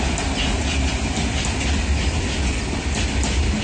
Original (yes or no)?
yes